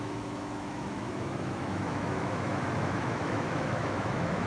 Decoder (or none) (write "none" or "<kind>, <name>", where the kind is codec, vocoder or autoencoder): autoencoder, DAC-VAE